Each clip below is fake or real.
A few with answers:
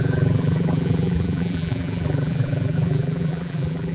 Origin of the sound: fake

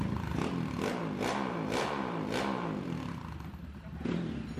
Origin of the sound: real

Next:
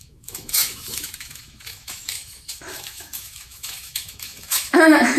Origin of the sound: fake